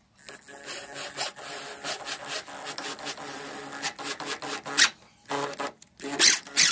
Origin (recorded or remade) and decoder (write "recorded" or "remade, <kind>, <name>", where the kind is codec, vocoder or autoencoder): recorded